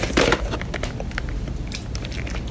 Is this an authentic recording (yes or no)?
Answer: yes